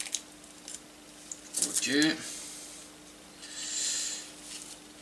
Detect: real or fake real